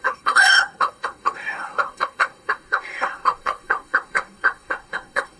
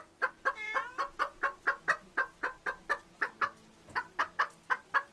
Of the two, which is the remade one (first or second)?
first